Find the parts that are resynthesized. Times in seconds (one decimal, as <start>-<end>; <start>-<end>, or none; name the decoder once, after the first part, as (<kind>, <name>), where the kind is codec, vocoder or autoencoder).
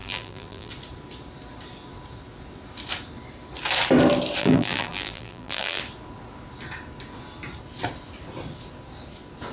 0.0-0.7 (vocoder, BigVGAN v2); 4.4-5.8